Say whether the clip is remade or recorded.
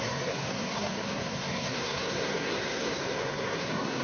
remade